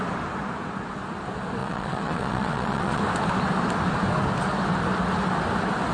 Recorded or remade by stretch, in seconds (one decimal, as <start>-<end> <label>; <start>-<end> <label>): 0.0-1.6 recorded; 1.6-3.0 remade; 3.0-5.9 recorded